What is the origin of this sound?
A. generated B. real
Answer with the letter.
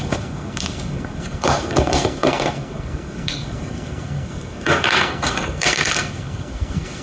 A